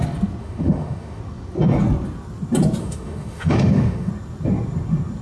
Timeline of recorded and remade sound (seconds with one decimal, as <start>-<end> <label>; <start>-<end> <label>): 0.0-0.4 recorded; 0.4-1.2 remade; 1.2-2.8 recorded; 2.8-4.1 remade; 4.1-5.2 recorded